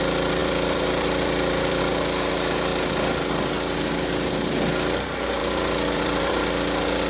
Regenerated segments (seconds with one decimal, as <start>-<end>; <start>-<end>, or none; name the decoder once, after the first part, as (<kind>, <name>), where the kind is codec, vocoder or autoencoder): 0.4-1.8 (vocoder, BigVGAN v2); 5.4-6.4

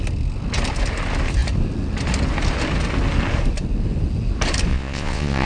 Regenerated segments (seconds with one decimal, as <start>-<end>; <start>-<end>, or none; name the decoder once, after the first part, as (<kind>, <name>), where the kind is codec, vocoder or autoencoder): 4.7-5.5 (vocoder, Vocos)